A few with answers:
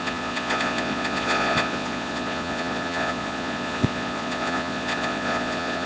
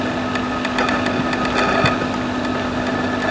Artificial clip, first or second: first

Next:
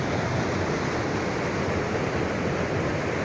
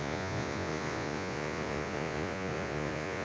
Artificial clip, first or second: second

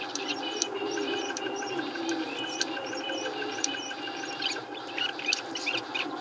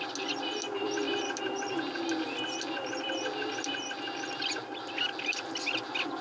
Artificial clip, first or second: first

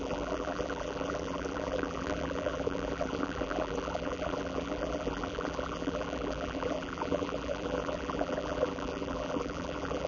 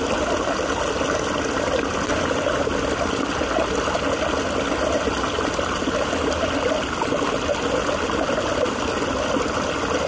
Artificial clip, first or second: first